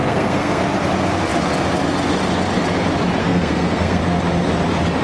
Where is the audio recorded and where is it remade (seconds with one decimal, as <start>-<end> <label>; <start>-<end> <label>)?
0.0-0.6 remade; 0.6-3.2 recorded; 3.2-4.0 remade; 4.0-5.0 recorded